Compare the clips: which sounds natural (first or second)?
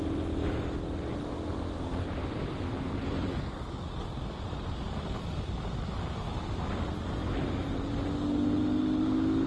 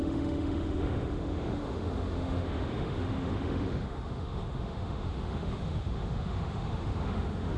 first